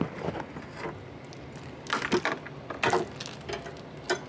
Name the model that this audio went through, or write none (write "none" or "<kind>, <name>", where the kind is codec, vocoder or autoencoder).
none